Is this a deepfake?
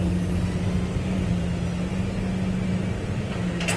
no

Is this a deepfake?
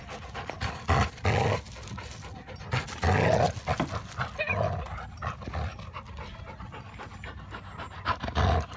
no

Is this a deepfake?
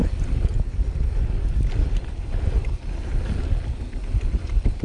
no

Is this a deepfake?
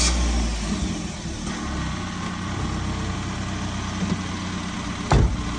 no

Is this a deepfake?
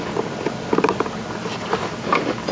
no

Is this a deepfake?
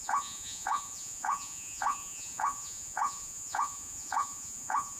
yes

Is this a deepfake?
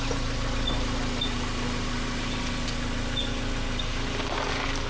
no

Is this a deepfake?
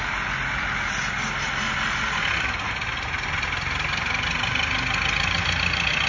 no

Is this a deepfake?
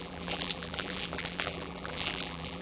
yes